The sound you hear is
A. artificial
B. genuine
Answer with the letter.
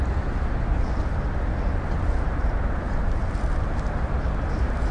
B